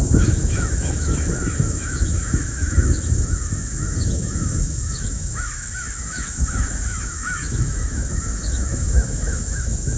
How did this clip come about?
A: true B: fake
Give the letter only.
B